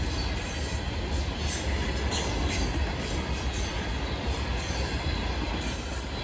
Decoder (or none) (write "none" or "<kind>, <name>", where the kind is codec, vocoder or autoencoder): none